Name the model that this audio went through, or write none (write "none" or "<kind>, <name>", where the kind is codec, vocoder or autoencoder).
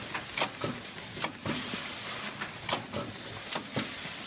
none